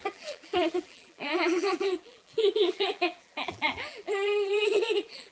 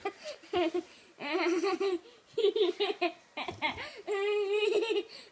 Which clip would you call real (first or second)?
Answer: second